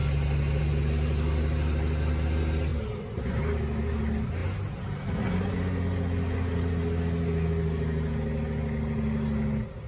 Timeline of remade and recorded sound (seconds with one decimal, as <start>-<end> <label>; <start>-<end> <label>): 0.0-9.9 recorded